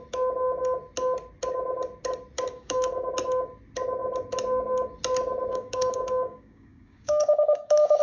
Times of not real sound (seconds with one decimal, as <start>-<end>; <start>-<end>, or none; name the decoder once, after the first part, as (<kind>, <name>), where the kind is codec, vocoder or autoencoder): 2.5-3.1 (codec, DAC); 5.5-8.0

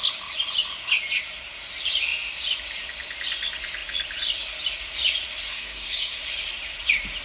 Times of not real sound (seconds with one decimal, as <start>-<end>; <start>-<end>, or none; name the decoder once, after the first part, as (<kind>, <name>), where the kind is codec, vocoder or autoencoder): 5.5-6.2 (codec, SNAC)

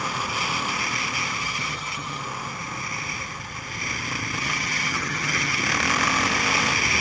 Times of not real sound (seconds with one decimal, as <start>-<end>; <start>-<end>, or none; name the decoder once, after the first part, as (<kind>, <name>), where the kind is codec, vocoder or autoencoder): 1.4-2.2 (vocoder, HiFi-GAN); 4.4-5.6

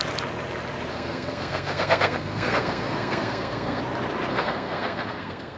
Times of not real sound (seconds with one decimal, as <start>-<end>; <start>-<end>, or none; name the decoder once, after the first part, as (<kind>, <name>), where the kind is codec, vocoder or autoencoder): 0.9-3.8 (codec, SNAC); 4.3-5.6

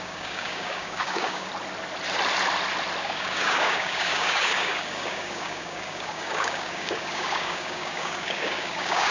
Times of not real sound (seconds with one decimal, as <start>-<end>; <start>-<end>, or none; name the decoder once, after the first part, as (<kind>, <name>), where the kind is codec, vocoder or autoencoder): 0.0-1.5 (codec, DAC); 3.0-9.1

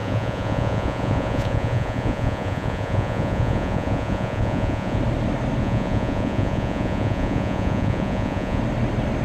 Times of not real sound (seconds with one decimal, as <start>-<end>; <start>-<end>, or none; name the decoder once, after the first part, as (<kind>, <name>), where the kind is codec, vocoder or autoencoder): 0.0-5.0 (vocoder, Vocos); 5.6-8.6